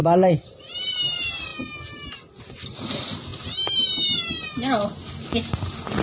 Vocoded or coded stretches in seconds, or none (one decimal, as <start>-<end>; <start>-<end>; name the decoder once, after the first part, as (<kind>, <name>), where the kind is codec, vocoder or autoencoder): 0.0-0.8 (vocoder, BigVGAN v2)